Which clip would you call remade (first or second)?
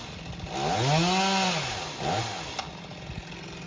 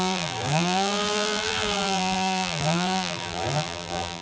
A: second